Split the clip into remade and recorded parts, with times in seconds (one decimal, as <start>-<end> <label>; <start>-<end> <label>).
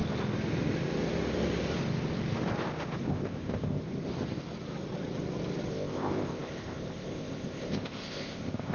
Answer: 0.0-3.1 recorded; 3.1-3.8 remade; 3.8-5.7 recorded; 5.7-8.7 remade